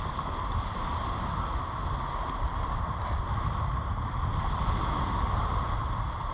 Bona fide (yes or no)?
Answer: yes